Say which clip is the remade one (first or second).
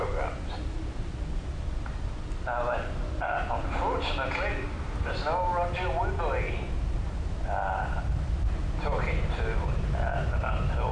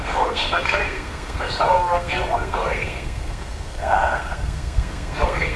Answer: second